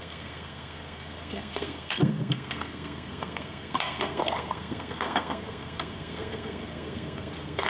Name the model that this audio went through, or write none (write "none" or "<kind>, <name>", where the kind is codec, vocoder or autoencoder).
codec, SNAC